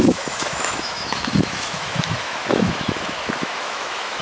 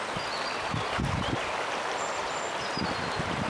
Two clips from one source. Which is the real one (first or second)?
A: second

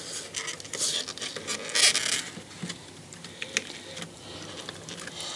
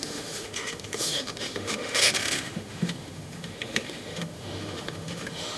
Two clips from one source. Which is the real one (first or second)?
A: first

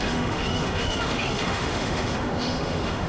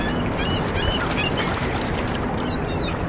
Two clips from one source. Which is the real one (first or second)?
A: second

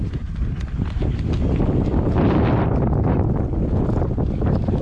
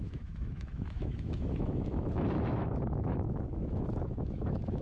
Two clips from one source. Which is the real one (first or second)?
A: first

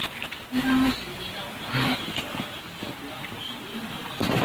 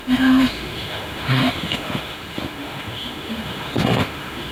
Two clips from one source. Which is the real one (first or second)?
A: first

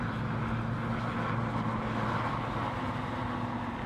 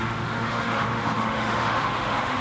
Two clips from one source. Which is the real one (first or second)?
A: first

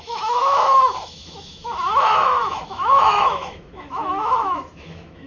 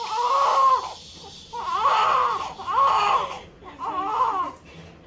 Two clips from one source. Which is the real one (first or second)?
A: second